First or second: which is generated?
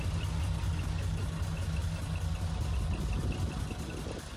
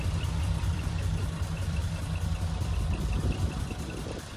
second